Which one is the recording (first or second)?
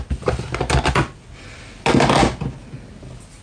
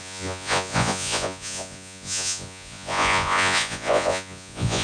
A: first